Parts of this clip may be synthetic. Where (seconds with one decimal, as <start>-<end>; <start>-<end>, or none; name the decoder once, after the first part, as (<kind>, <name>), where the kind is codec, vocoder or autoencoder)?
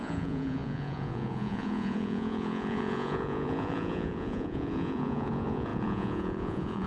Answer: 0.0-6.9 (vocoder, Vocos)